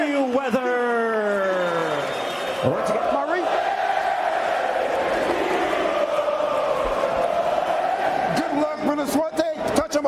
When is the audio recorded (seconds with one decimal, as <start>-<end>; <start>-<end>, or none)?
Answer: 0.0-10.1